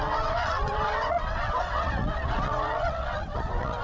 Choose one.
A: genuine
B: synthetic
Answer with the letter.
B